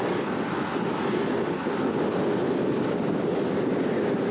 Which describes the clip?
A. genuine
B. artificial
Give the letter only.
A